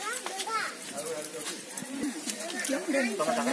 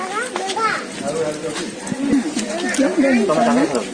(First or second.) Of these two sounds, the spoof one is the first